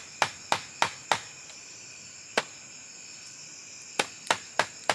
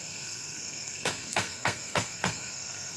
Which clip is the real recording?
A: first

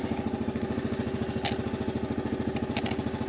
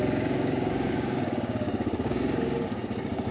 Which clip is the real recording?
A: first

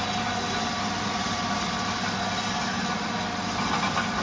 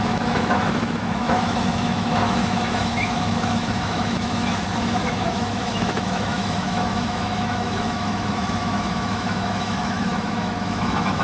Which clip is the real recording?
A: first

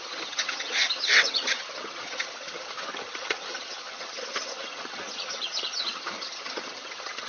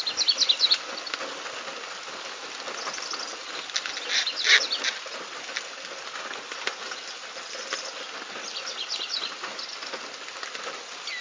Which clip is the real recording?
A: second